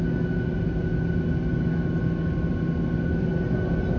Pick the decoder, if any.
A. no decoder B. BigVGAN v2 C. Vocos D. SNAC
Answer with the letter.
A